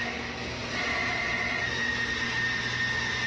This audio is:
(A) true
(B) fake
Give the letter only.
A